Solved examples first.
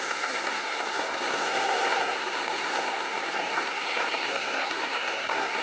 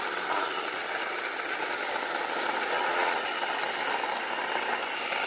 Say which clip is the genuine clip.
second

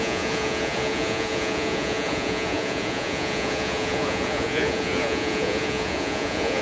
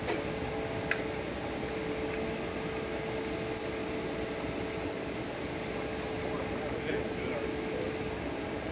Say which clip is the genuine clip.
second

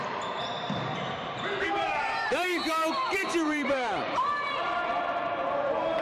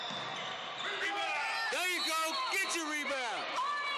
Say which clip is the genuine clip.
second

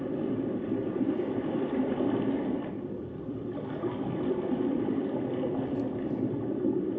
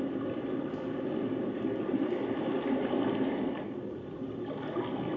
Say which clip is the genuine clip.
second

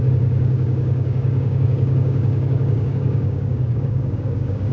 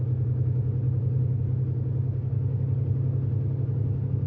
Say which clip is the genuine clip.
second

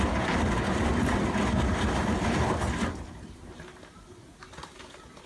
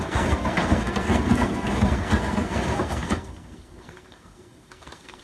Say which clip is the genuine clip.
first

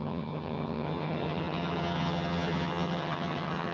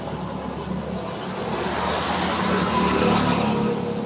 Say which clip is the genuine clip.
second